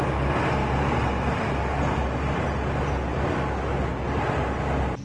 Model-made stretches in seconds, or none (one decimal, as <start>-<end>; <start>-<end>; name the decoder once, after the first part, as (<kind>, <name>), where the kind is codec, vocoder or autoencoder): none